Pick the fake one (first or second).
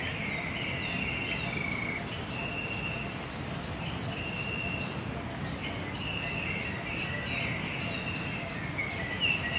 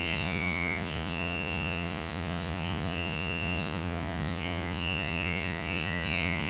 second